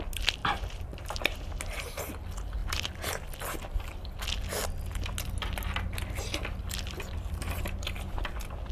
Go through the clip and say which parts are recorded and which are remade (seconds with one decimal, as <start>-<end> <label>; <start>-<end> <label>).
0.0-0.4 recorded; 0.4-2.1 remade; 2.1-8.7 recorded